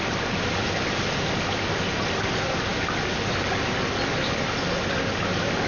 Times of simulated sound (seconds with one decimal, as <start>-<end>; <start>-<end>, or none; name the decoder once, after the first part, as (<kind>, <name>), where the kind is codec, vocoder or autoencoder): none